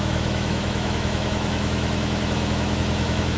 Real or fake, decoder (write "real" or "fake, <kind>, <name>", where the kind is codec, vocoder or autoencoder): fake, autoencoder, DAC-VAE